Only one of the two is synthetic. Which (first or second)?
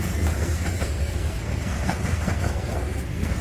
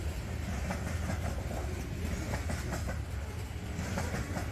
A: first